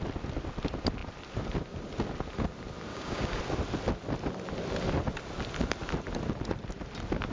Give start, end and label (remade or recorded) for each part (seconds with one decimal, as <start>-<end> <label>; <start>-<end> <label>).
0.0-2.9 recorded; 2.9-3.4 remade; 3.4-7.3 recorded